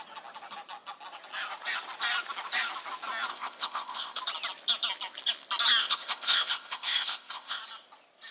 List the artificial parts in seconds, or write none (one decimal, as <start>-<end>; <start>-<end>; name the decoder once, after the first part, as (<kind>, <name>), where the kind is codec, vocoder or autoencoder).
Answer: 3.3-4.2 (codec, ZipCodec); 5.8-7.6